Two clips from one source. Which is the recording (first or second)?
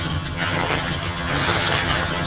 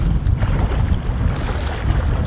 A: second